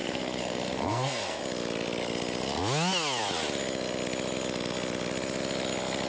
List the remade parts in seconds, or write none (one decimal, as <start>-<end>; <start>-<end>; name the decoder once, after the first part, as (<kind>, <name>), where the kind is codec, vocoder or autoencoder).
0.0-1.4 (codec, SNAC)